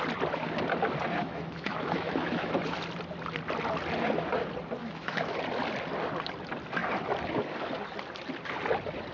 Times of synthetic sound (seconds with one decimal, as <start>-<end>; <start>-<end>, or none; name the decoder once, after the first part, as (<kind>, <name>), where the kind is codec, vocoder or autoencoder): 1.2-2.6 (autoencoder, DAC-VAE); 4.8-5.4